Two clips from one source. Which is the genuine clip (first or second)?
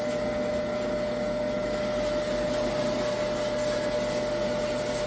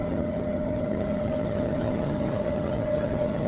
first